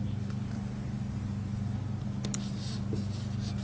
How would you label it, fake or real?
real